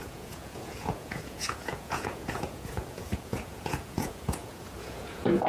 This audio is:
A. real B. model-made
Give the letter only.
B